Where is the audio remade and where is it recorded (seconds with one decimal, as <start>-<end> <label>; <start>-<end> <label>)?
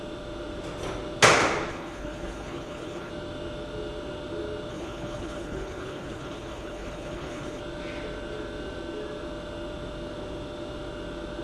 0.0-1.7 recorded; 1.7-3.1 remade; 3.1-4.7 recorded; 4.7-7.6 remade; 7.6-11.4 recorded